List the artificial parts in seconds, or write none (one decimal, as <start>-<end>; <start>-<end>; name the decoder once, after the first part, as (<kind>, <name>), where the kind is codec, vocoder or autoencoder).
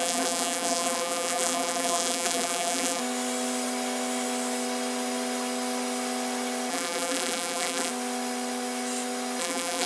0.0-3.0 (vocoder, BigVGAN v2); 6.7-7.9; 9.4-9.9